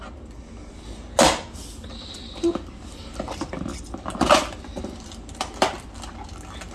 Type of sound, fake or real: real